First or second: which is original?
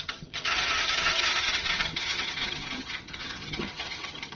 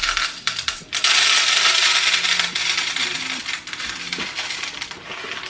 second